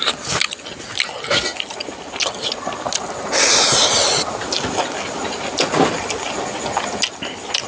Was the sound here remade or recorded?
recorded